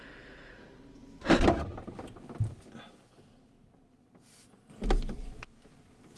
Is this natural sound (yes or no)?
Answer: yes